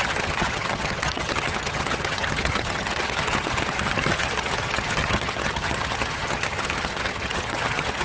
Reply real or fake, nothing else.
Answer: fake